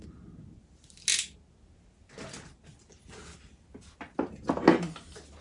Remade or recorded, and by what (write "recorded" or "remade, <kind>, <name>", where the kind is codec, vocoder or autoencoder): recorded